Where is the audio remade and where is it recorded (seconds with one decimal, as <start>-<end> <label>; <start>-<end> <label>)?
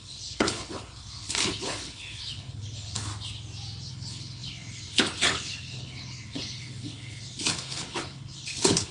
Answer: 0.0-3.1 remade; 3.1-3.9 recorded; 3.9-8.9 remade